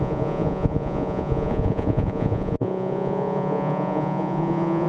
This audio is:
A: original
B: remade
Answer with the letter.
B